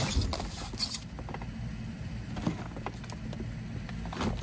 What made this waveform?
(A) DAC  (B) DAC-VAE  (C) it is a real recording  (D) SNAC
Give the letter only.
C